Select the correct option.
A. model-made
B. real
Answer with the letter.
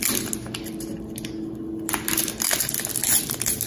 B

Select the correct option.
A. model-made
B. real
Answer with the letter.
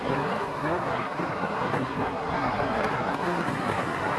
A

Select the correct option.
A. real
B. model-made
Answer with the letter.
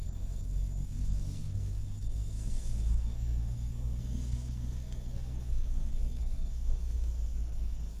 B